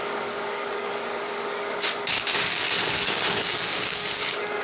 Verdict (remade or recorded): remade